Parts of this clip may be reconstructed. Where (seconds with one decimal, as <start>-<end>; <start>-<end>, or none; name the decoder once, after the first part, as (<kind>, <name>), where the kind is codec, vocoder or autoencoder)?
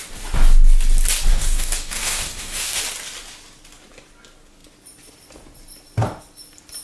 1.3-2.8 (codec, DAC)